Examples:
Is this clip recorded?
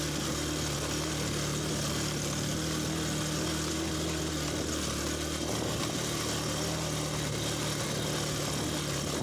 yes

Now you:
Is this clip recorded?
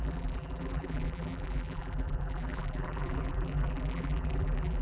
no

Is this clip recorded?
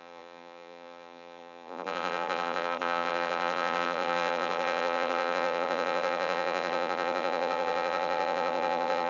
no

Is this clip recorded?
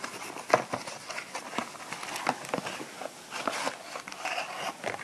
yes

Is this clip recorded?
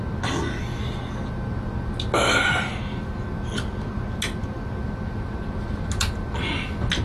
yes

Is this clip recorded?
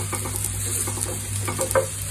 yes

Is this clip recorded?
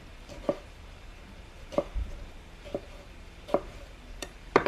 no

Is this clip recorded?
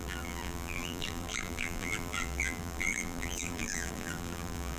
no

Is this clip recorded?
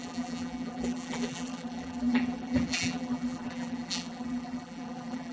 no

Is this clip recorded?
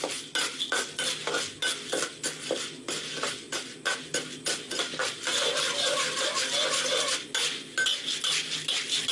yes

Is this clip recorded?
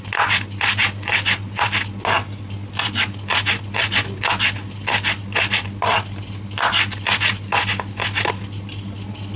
yes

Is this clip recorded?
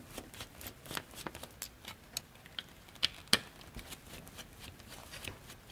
yes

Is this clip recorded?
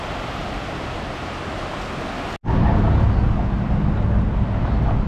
yes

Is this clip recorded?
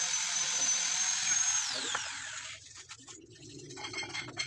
no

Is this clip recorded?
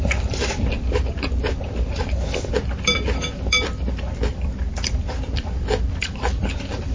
no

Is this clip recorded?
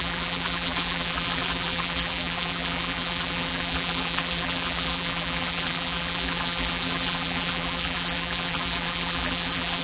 no